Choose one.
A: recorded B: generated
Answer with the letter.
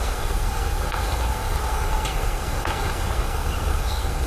B